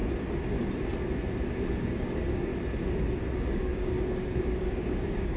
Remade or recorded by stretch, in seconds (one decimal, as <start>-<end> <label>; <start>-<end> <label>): 0.0-1.8 recorded; 1.8-2.5 remade; 2.5-3.3 recorded; 3.3-5.4 remade

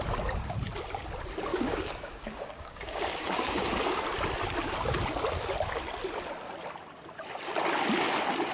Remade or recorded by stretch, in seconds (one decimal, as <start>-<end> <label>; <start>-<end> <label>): 0.0-1.5 recorded; 1.5-3.8 remade; 3.8-8.5 recorded

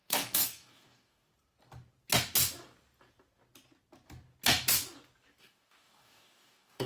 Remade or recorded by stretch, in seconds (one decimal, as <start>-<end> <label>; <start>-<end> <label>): 0.0-1.3 remade; 1.3-5.4 recorded; 5.4-6.9 remade

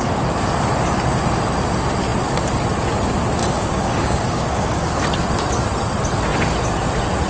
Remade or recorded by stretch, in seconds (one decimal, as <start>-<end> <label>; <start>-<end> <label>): 0.0-3.4 recorded; 3.4-4.9 remade; 4.9-7.3 recorded

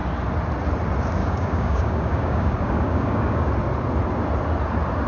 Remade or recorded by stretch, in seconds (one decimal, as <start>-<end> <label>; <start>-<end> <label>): 0.0-1.2 recorded; 1.2-3.5 remade; 3.5-5.1 recorded

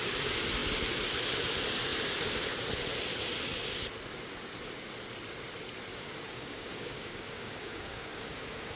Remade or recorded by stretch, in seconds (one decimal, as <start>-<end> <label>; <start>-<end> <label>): 0.0-5.9 recorded; 5.9-8.8 remade

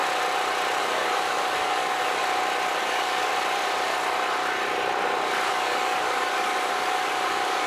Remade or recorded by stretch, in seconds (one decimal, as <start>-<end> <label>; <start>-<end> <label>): 0.0-0.8 recorded; 0.8-2.2 remade; 2.2-2.8 recorded; 2.8-3.3 remade; 3.3-5.5 recorded; 5.5-7.7 remade

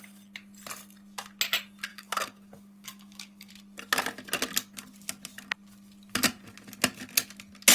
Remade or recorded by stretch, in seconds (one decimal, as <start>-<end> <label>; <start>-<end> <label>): 0.0-1.9 recorded; 1.9-3.5 remade; 3.5-7.7 recorded